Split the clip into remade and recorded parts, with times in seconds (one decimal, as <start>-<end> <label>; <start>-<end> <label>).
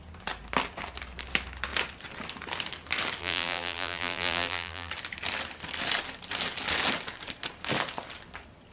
0.0-3.2 recorded; 3.2-4.9 remade; 4.9-8.7 recorded